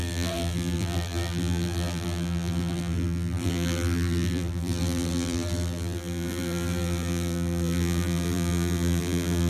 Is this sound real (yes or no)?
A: no